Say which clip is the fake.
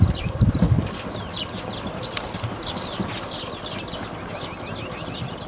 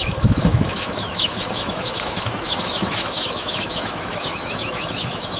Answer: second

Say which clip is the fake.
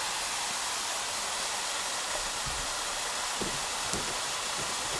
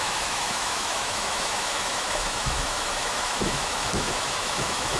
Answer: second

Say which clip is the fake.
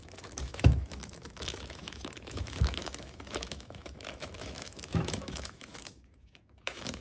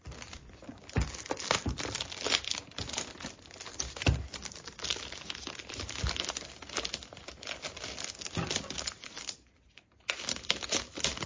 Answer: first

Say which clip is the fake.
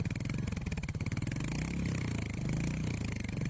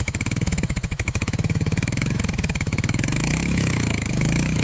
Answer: second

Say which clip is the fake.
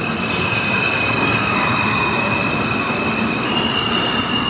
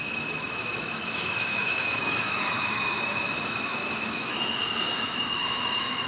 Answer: second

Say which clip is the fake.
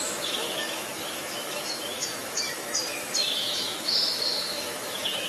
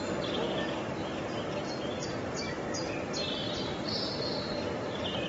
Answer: first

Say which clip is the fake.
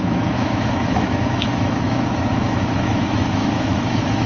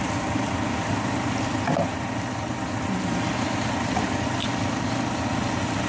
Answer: first